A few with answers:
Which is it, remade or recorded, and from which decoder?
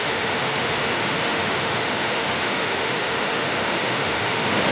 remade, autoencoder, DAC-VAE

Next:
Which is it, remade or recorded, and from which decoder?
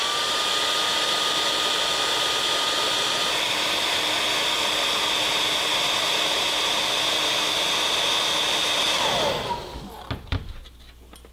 recorded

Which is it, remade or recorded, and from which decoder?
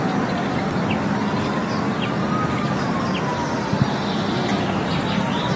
recorded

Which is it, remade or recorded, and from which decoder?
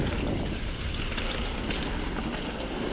recorded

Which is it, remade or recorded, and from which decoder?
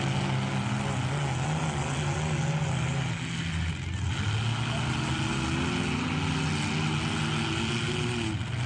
recorded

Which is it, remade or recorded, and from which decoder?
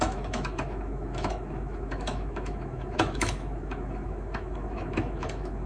remade, autoencoder, DAC-VAE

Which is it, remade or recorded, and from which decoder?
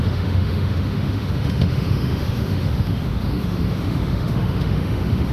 remade, autoencoder, DAC-VAE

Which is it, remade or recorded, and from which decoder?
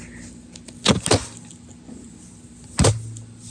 recorded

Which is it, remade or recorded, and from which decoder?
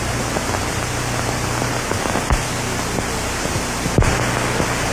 recorded